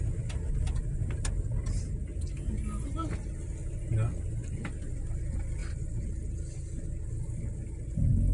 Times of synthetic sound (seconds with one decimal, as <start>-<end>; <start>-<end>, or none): none